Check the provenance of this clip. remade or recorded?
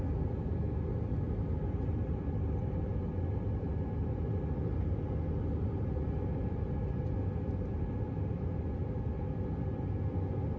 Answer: recorded